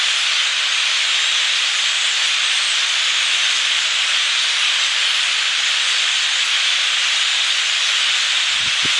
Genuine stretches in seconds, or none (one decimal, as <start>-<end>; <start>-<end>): 0.0-9.0